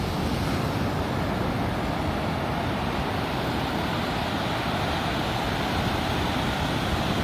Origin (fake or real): real